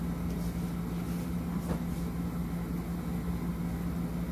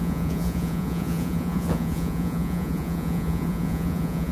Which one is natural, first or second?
first